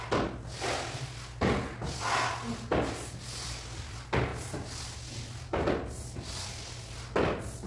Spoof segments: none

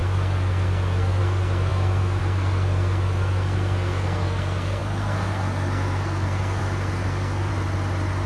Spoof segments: 0.0-7.5 (codec, SNAC)

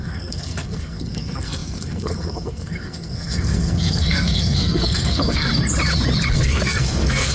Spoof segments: 0.0-5.5 (codec, SNAC); 6.3-7.3

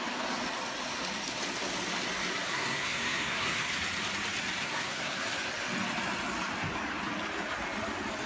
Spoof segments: 2.5-3.7 (codec, SNAC); 4.6-5.2

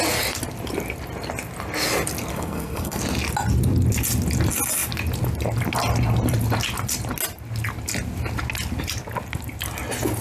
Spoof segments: 2.3-3.0 (codec, SNAC)

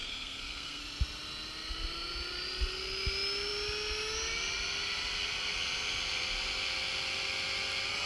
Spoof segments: 0.0-0.8 (codec, SNAC)

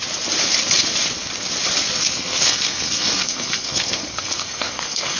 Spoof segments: 2.0-5.2 (codec, SNAC)